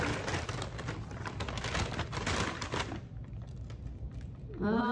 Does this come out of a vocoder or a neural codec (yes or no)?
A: yes